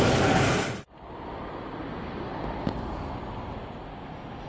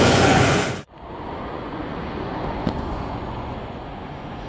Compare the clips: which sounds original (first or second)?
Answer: first